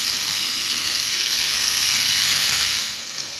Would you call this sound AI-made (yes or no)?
yes